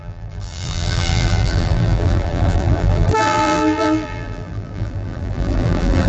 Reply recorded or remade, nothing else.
remade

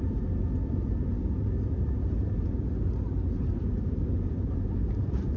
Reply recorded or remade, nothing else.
remade